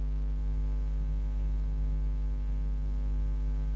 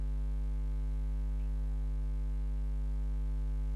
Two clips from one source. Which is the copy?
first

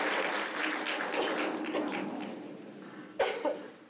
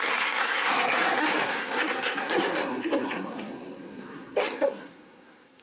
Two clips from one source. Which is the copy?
second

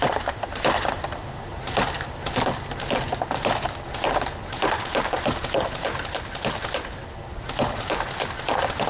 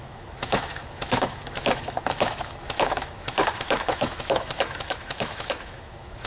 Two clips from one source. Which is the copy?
second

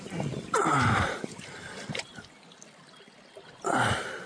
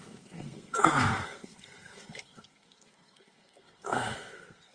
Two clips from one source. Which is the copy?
second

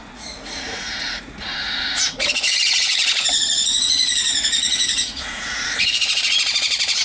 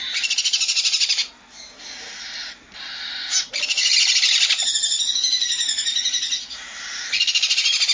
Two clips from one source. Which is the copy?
first